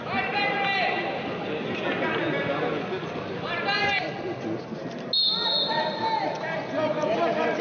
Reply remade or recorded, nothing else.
recorded